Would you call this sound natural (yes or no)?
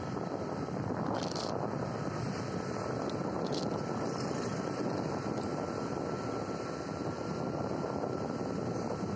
yes